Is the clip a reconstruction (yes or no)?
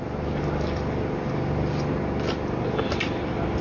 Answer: no